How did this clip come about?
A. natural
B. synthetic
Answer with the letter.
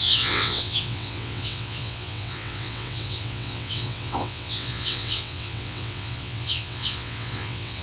B